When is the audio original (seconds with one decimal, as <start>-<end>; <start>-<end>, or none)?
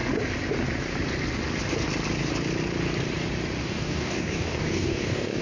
0.0-3.6